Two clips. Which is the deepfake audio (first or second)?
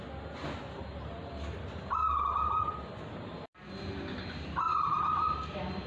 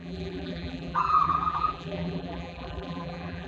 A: second